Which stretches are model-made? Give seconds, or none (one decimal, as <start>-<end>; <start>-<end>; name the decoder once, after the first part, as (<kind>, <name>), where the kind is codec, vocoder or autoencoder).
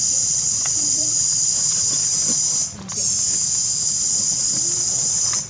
0.0-2.0 (vocoder, WaveNeXt); 3.8-5.5